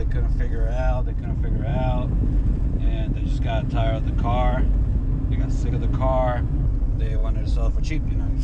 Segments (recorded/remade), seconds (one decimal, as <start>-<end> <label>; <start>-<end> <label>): 0.0-8.4 recorded